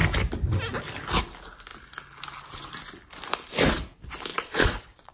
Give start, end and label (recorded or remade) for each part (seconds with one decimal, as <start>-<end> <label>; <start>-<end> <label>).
0.0-4.3 recorded; 4.3-5.1 remade